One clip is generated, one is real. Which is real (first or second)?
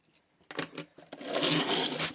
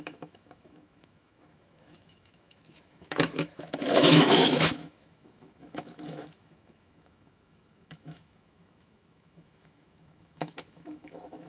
first